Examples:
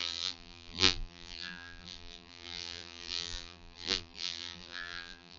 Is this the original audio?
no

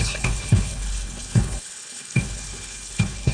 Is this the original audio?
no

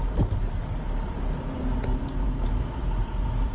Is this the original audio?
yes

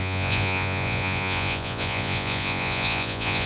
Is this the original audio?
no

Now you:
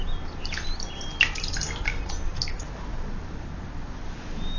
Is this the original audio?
yes